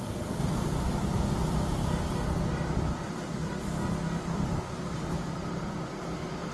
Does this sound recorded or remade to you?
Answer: recorded